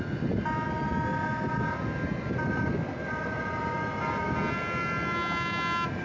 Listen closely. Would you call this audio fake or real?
real